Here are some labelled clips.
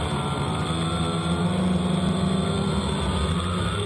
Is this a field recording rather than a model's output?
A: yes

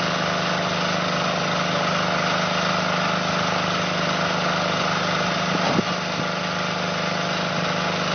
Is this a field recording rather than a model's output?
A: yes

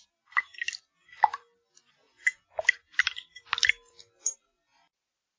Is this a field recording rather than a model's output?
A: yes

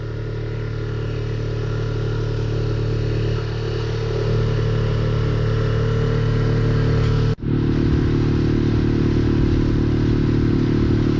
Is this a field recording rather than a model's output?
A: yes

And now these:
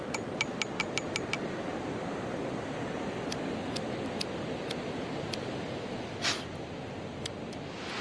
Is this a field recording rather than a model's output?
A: yes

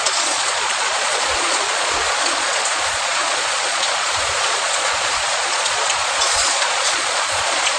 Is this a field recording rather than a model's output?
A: no